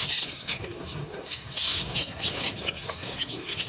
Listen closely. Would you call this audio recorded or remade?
remade